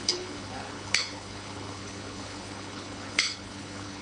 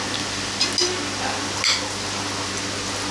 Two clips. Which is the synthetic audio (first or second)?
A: first